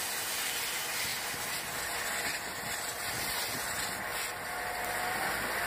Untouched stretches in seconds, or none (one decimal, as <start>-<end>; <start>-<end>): 0.0-5.7